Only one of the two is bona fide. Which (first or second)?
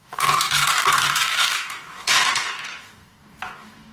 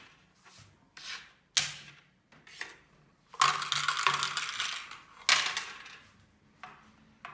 second